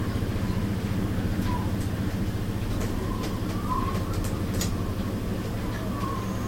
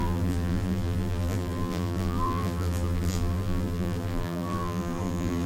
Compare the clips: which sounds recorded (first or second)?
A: first